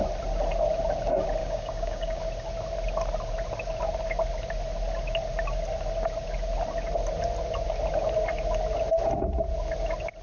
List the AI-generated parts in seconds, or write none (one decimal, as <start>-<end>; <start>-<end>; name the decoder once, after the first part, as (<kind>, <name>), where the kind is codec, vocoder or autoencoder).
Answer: 1.4-2.2 (codec, DAC)